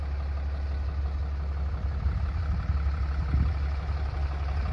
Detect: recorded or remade recorded